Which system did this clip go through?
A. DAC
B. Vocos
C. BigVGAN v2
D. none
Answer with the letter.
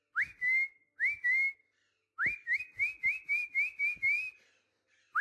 D